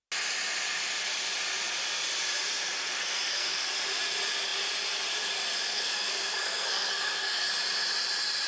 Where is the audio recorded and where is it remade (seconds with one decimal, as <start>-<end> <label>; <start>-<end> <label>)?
0.0-2.9 recorded; 2.9-3.7 remade; 3.7-5.7 recorded; 5.7-7.5 remade; 7.5-8.5 recorded